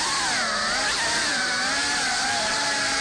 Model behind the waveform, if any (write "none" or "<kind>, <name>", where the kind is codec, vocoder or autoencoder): vocoder, BigVGAN v2